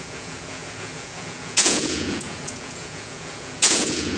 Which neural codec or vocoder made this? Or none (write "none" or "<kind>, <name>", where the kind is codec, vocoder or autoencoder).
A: vocoder, Vocos